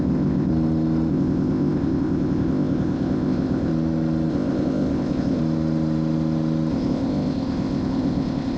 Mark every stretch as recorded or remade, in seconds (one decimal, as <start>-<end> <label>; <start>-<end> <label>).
0.0-0.5 remade; 0.5-1.1 recorded; 1.1-3.7 remade; 3.7-4.3 recorded; 4.3-5.4 remade; 5.4-6.7 recorded; 6.7-8.6 remade